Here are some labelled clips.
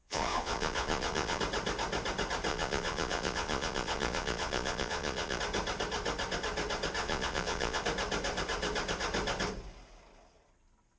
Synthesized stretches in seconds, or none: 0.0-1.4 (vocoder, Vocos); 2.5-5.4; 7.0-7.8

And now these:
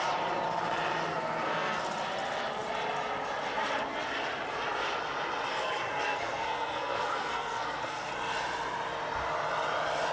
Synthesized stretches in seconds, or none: 1.1-1.8 (codec, SNAC); 5.5-8.1

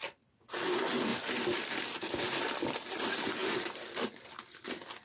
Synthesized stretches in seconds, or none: none